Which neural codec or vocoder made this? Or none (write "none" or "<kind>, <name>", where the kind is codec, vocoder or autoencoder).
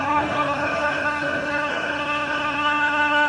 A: codec, SNAC